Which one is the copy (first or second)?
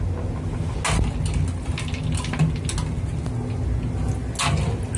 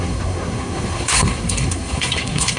second